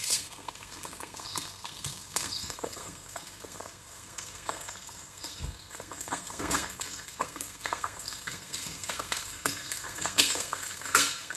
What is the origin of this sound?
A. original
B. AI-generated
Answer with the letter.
B